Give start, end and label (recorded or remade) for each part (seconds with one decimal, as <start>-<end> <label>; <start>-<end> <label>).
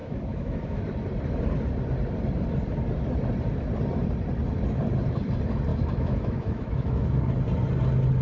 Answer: 0.0-0.8 remade; 0.8-5.7 recorded; 5.7-7.2 remade; 7.2-8.2 recorded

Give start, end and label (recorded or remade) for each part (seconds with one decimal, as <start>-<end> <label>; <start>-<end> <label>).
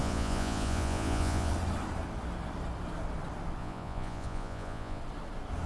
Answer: 0.0-1.5 remade; 1.5-3.6 recorded; 3.6-5.0 remade; 5.0-5.7 recorded